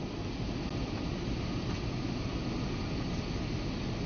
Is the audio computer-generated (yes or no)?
no